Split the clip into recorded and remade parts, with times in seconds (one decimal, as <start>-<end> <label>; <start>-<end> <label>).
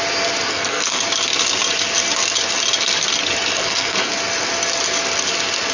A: 0.0-0.5 recorded; 0.5-1.0 remade; 1.0-3.5 recorded; 3.5-4.1 remade; 4.1-5.7 recorded